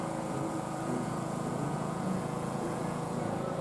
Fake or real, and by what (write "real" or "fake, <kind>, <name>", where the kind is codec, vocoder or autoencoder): fake, vocoder, Vocos